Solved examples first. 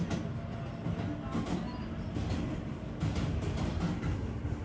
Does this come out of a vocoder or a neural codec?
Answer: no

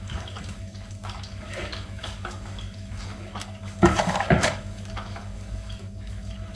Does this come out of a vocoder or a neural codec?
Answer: yes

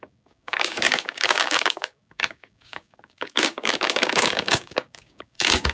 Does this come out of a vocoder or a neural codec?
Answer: yes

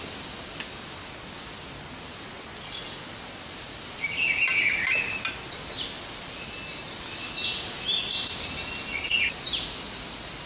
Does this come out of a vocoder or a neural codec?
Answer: no